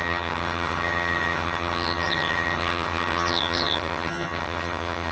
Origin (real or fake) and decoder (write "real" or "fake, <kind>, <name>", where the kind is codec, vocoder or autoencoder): fake, vocoder, HiFi-GAN